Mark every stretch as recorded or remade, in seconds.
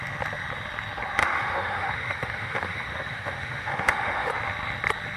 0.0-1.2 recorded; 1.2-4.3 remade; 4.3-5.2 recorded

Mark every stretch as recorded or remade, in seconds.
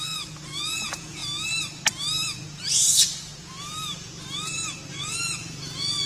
0.0-1.2 remade; 1.2-4.9 recorded; 4.9-6.1 remade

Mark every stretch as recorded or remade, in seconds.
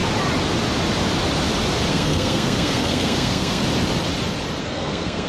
0.0-1.9 recorded; 1.9-3.6 remade; 3.6-4.6 recorded; 4.6-5.3 remade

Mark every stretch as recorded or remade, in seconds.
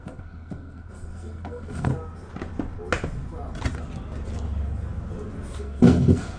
0.0-1.9 remade; 1.9-5.6 recorded; 5.6-6.4 remade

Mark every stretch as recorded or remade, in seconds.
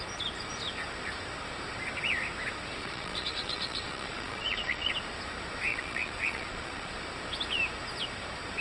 0.0-2.8 recorded; 2.8-4.9 remade; 4.9-5.7 recorded; 5.7-6.9 remade; 6.9-8.6 recorded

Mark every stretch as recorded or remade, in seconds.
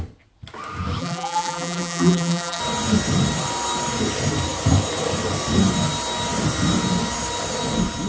0.0-1.0 recorded; 1.0-2.6 remade; 2.6-8.1 recorded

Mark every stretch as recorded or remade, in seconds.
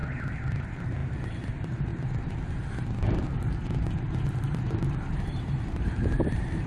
0.0-0.6 recorded; 0.6-1.9 remade; 1.9-5.1 recorded; 5.1-6.7 remade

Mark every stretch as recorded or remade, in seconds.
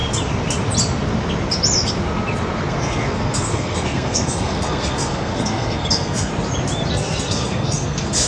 0.0-2.7 recorded; 2.7-6.3 remade; 6.3-6.9 recorded; 6.9-8.3 remade